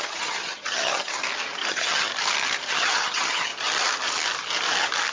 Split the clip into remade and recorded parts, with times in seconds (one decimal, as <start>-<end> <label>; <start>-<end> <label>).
0.0-1.2 remade; 1.2-1.7 recorded; 1.7-2.1 remade; 2.1-2.7 recorded; 2.7-3.5 remade; 3.5-5.1 recorded